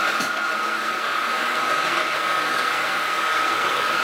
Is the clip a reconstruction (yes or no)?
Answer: yes